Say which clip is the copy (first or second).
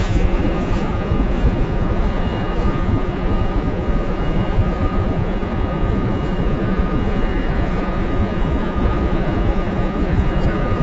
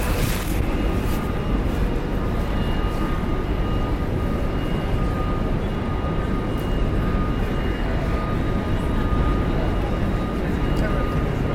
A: first